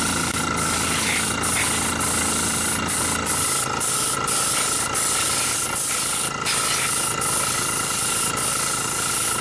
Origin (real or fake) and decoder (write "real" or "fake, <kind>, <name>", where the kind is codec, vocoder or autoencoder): real